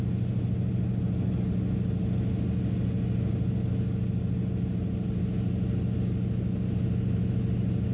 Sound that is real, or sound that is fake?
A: real